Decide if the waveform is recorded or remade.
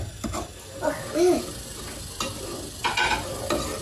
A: recorded